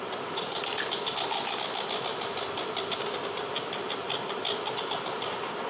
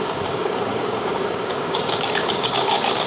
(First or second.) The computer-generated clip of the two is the second